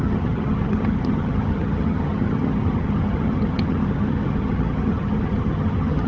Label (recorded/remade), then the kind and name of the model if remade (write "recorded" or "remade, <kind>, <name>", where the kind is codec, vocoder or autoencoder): remade, vocoder, HiFi-GAN